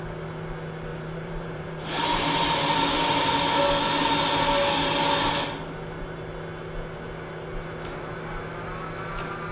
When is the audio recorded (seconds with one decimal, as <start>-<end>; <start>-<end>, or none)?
0.0-0.9; 3.6-9.5